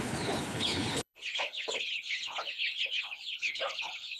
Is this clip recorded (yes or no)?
no